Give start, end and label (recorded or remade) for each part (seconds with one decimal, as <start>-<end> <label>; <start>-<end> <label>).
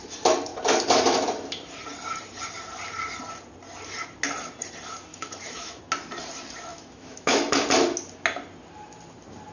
0.0-5.1 recorded; 5.1-5.8 remade; 5.8-6.7 recorded; 6.7-7.5 remade; 7.5-9.5 recorded